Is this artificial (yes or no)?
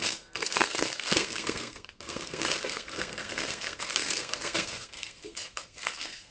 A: yes